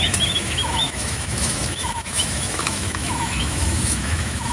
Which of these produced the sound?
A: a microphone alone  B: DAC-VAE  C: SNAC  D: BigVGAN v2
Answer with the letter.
B